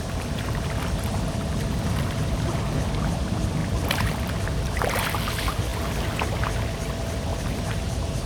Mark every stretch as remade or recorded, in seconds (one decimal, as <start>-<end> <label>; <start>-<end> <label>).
0.0-3.6 recorded; 3.6-4.9 remade; 4.9-7.3 recorded; 7.3-8.3 remade